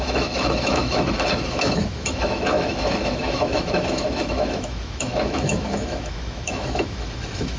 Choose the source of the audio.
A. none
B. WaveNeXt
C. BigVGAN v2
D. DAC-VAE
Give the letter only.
D